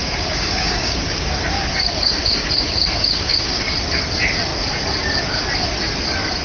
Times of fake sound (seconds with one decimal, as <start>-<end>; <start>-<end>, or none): 0.0-3.8